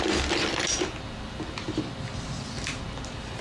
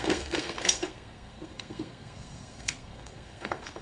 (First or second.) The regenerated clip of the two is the second